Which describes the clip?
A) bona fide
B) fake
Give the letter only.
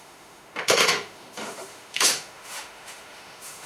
B